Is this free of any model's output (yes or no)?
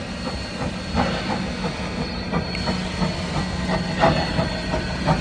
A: yes